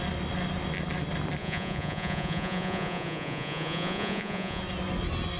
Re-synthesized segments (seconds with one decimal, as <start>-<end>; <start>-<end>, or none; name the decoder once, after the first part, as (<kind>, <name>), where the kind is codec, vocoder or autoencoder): 1.4-4.6 (vocoder, Vocos)